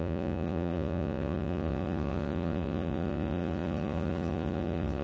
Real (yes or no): no